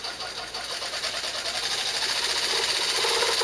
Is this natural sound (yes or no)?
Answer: yes